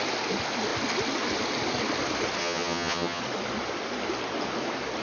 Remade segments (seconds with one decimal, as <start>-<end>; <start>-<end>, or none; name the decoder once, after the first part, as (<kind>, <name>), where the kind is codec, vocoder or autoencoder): 2.4-3.2 (vocoder, HiFi-GAN)